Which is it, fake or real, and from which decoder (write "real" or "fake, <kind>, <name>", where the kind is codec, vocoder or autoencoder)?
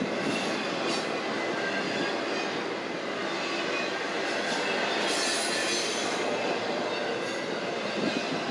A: real